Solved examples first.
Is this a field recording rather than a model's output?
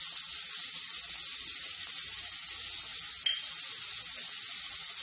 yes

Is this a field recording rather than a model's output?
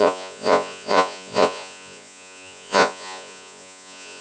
no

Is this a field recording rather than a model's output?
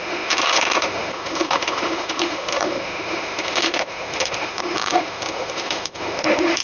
no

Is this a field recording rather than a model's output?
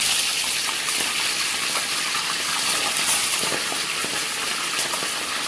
yes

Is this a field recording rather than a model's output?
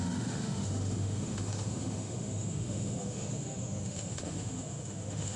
no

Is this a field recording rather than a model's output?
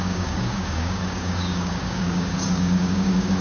no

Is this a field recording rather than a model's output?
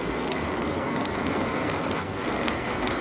no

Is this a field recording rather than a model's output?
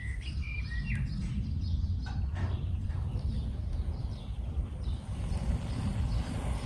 yes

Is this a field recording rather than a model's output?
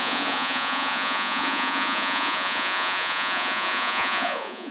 no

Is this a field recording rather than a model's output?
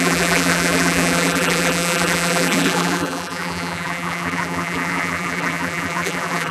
no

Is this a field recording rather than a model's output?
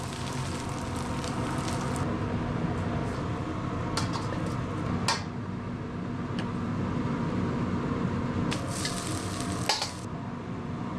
yes